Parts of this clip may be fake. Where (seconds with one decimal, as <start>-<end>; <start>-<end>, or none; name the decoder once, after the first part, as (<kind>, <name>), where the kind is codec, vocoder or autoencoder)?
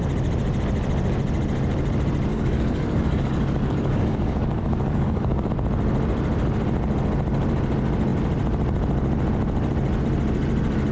2.3-5.5 (codec, DAC)